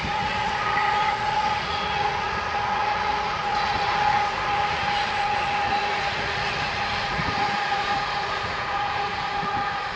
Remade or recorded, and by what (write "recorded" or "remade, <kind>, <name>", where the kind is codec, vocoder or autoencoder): remade, vocoder, Vocos